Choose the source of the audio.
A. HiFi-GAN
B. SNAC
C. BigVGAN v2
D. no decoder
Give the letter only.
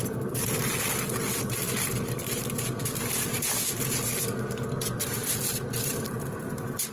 C